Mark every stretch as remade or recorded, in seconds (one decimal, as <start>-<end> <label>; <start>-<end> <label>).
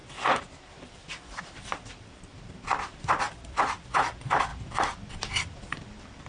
0.0-2.3 remade; 2.3-3.0 recorded; 3.0-6.3 remade